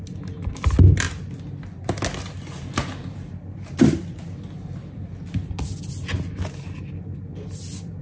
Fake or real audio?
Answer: real